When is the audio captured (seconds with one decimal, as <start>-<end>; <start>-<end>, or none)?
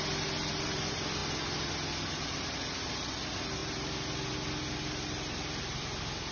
0.0-6.3